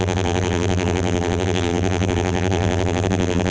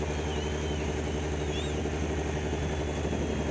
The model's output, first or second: first